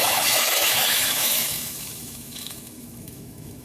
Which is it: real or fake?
fake